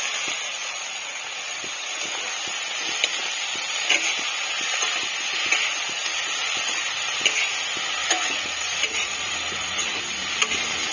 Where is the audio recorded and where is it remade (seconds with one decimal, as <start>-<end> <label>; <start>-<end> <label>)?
0.0-0.5 recorded; 0.5-2.2 remade; 2.2-8.0 recorded; 8.0-10.0 remade; 10.0-10.9 recorded